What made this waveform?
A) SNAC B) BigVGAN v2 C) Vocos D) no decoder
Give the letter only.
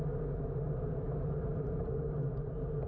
D